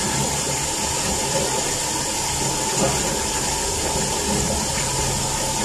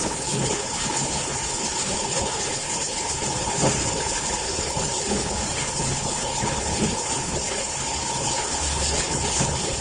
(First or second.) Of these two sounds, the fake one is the second